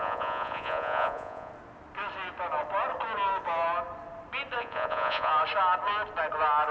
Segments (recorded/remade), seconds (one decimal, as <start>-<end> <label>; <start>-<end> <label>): 0.0-1.5 remade; 1.5-4.6 recorded; 4.6-5.3 remade; 5.3-6.7 recorded